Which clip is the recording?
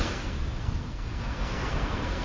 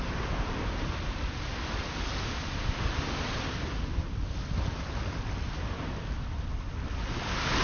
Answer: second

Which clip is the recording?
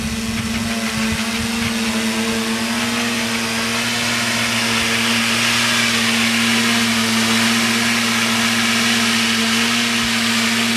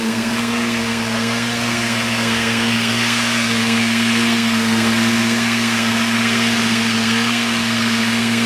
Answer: first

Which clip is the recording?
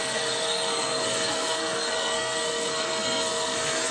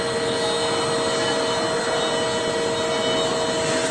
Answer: second